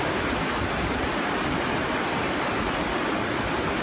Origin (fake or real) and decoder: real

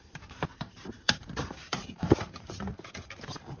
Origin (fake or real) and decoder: fake, vocoder, BigVGAN v2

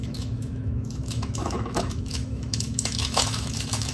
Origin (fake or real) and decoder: fake, autoencoder, DAC-VAE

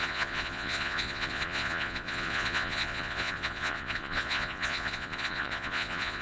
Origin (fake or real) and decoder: fake, vocoder, Vocos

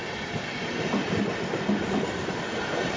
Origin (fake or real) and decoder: real